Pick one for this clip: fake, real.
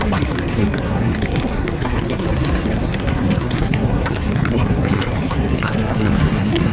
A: fake